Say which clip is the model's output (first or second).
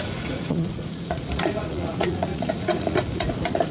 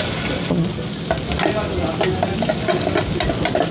first